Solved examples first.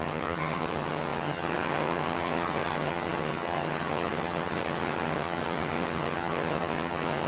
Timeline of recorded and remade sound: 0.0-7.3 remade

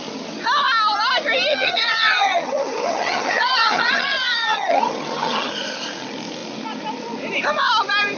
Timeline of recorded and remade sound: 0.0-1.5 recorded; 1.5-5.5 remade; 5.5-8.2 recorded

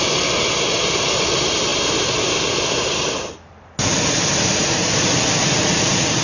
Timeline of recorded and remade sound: 0.0-6.2 recorded

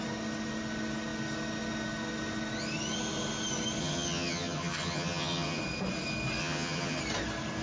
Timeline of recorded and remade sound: 0.0-3.8 recorded; 3.8-5.6 remade; 5.6-6.4 recorded; 6.4-7.0 remade; 7.0-7.6 recorded

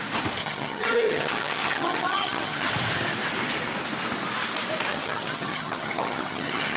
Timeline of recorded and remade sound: 0.0-0.4 recorded; 0.4-2.7 remade; 2.7-4.9 recorded; 4.9-6.8 remade